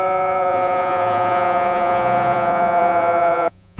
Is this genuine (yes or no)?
no